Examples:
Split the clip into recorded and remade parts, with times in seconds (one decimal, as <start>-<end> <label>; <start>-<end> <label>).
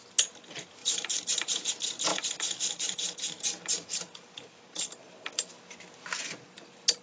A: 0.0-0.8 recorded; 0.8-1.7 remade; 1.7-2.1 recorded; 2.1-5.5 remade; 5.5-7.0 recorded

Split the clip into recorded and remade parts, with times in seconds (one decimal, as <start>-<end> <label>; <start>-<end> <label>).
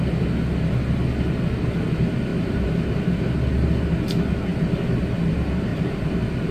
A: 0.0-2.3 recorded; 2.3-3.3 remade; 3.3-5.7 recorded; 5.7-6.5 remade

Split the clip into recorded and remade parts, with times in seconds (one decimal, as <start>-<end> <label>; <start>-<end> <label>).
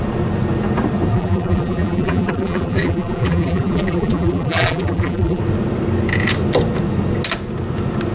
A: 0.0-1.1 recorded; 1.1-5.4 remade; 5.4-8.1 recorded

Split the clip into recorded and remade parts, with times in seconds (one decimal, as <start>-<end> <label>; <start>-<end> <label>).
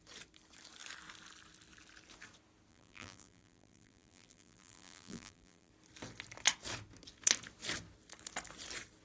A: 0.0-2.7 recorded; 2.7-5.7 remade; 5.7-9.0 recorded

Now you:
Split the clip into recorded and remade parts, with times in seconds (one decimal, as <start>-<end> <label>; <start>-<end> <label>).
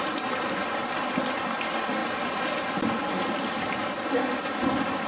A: 0.0-0.6 remade; 0.6-1.5 recorded; 1.5-5.1 remade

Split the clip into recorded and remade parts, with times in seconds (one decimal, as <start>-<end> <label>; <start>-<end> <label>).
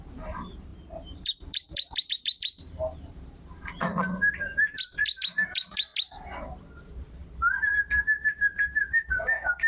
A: 0.0-3.9 remade; 3.9-4.6 recorded; 4.6-5.9 remade; 5.9-6.7 recorded; 6.7-7.2 remade; 7.2-8.3 recorded; 8.3-9.7 remade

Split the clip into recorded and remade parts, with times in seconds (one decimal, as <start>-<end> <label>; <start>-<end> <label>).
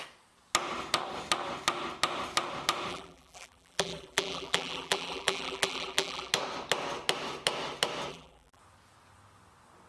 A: 0.0-2.9 recorded; 2.9-6.3 remade; 6.3-8.1 recorded; 8.1-8.6 remade; 8.6-9.9 recorded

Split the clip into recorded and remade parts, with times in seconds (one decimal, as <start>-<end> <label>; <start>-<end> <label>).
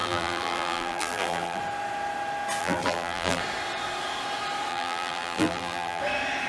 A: 0.0-1.6 remade; 1.6-2.6 recorded; 2.6-3.4 remade; 3.4-4.7 recorded; 4.7-6.0 remade; 6.0-6.5 recorded